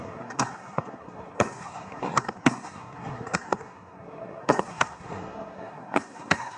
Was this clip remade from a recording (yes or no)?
yes